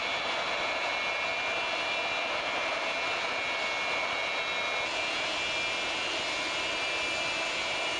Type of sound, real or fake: real